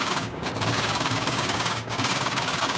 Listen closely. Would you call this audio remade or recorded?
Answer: remade